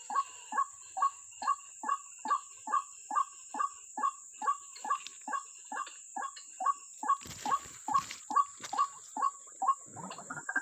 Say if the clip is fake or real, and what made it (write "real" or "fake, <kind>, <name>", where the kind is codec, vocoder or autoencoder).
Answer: real